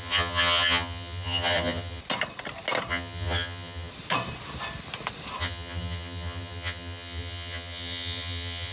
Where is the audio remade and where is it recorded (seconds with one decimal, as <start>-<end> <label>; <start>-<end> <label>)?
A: 0.0-2.0 remade; 2.0-2.9 recorded; 2.9-3.9 remade; 3.9-5.4 recorded; 5.4-8.7 remade